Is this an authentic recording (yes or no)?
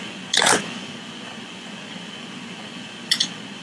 no